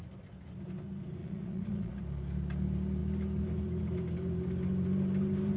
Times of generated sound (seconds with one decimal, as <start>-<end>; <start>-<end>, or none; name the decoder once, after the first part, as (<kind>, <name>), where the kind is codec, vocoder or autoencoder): 1.2-1.9 (vocoder, Vocos)